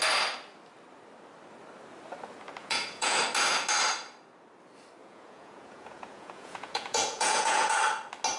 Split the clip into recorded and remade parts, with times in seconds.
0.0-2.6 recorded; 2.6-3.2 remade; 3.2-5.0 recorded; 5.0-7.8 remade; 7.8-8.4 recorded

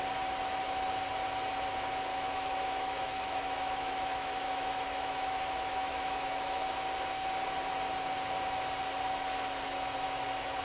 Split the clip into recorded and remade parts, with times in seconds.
0.0-2.1 recorded; 2.1-6.7 remade; 6.7-10.6 recorded

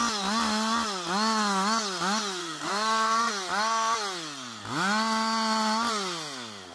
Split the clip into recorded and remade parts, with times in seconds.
0.0-2.4 recorded; 2.4-3.3 remade; 3.3-6.7 recorded